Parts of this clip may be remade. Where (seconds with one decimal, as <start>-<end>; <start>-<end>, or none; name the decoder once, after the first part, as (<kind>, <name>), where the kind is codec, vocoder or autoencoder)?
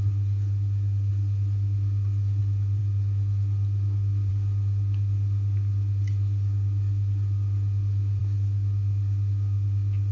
none